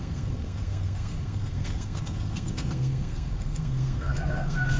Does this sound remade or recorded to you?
remade